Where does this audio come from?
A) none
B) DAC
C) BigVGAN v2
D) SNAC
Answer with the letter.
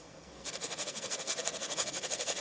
D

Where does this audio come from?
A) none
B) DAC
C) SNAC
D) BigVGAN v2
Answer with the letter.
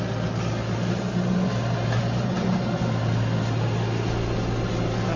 A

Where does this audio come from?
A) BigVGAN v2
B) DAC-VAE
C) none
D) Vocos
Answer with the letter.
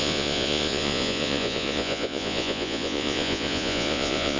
D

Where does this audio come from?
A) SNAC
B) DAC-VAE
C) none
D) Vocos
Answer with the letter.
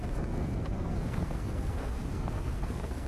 A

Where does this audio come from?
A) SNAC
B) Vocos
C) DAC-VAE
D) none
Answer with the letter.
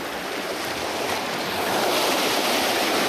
D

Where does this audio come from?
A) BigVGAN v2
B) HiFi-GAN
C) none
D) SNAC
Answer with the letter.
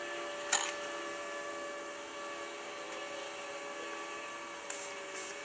C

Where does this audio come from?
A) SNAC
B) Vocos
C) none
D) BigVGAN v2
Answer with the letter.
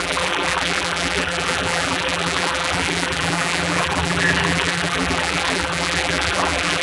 D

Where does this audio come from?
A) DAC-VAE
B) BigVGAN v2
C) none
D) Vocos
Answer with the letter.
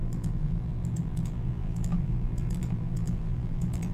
B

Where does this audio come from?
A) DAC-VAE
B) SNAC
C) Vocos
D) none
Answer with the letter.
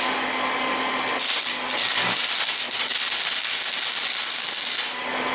D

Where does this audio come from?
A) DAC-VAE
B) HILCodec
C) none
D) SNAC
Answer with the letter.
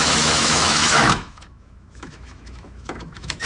A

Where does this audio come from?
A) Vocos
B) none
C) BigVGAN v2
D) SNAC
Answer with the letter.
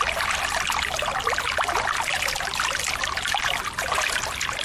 B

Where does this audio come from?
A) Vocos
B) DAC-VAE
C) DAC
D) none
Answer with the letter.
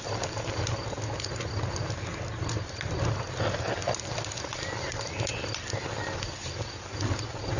D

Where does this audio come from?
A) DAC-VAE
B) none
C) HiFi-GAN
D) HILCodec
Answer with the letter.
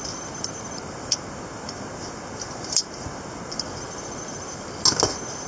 B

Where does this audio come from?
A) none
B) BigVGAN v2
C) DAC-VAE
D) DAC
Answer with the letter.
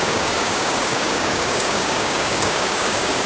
D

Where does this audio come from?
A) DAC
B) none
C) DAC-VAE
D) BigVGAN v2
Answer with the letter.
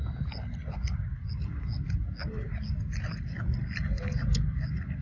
B